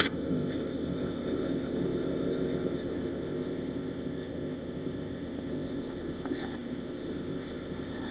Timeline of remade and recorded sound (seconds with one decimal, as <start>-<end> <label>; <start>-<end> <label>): 0.0-8.1 remade